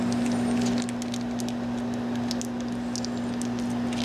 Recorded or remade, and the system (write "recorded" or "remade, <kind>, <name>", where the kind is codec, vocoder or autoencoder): recorded